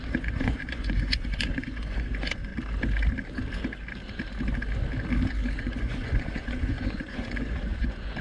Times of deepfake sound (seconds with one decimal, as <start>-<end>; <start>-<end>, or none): 0.0-2.5; 5.6-8.2

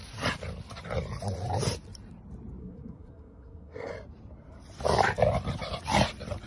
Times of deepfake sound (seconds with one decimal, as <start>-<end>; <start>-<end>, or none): 2.6-3.9

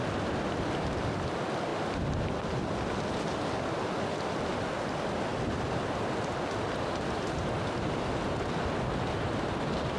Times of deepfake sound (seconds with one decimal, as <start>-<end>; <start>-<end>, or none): none

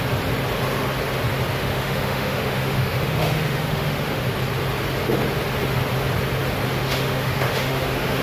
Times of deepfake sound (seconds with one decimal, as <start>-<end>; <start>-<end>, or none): 1.6-4.2; 6.8-8.2

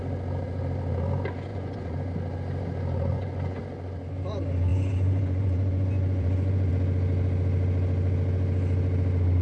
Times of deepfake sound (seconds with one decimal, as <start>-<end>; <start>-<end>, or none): 1.5-2.1; 3.1-3.6; 4.7-6.7